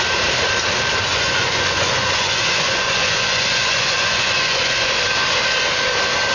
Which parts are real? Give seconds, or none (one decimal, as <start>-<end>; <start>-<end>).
0.0-1.1; 4.9-6.3